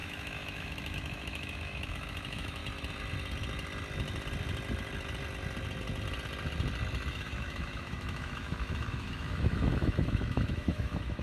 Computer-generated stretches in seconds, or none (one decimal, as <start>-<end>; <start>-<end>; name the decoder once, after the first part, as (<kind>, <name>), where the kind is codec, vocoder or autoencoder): 0.0-2.6 (autoencoder, DAC-VAE); 7.1-11.2